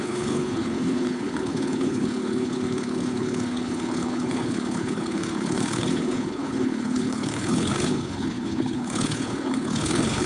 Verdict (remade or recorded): remade